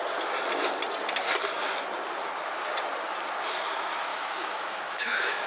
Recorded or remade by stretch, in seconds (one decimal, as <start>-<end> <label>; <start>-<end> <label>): 0.0-4.1 recorded; 4.1-5.5 remade

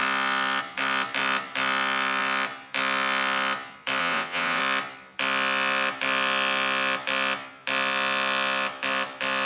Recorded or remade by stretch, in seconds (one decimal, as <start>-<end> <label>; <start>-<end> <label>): 0.0-4.0 recorded; 4.0-4.6 remade; 4.6-9.5 recorded

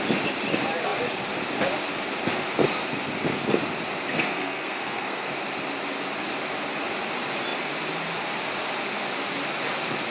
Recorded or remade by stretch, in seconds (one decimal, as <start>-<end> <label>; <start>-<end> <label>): 0.0-4.1 recorded; 4.1-5.3 remade; 5.3-10.1 recorded

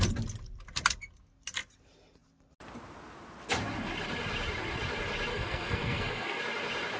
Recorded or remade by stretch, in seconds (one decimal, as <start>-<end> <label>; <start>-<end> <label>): 0.0-5.3 recorded; 5.3-6.4 remade; 6.4-7.0 recorded

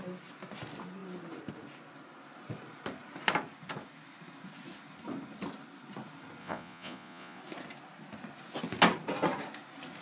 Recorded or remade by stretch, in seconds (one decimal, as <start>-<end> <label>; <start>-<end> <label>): 0.0-6.4 recorded; 6.4-7.4 remade; 7.4-10.0 recorded

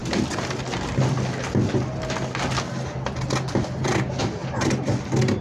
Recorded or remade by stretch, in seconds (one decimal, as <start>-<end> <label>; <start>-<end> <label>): 0.0-5.4 recorded

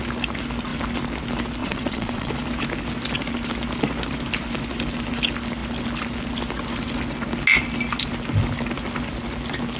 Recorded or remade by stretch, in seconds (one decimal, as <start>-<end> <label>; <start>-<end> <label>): 0.0-1.6 recorded; 1.6-2.3 remade; 2.3-9.8 recorded